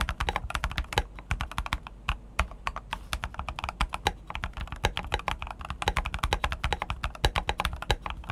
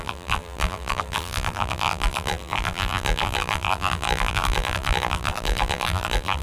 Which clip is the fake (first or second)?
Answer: second